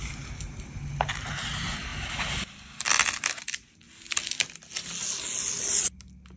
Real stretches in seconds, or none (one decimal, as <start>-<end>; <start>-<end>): 0.0-6.4